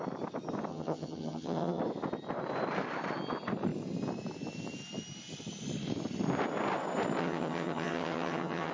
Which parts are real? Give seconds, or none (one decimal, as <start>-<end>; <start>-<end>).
0.0-0.7; 1.8-7.2